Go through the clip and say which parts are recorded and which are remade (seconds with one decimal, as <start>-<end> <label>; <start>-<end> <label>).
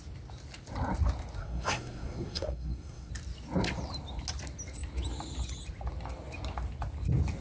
0.0-1.4 recorded; 1.4-3.1 remade; 3.1-7.4 recorded